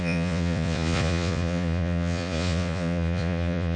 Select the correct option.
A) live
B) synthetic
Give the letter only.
B